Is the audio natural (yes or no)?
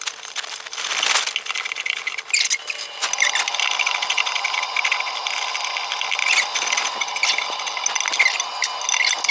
yes